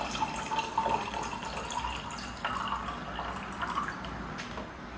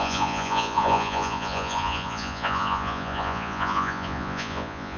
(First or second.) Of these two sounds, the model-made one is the second